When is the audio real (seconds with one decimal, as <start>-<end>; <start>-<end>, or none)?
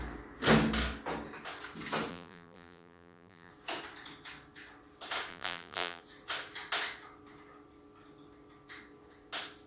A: 0.0-2.1; 3.5-5.3; 6.0-9.7